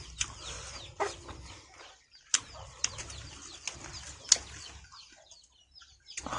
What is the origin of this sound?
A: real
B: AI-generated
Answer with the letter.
A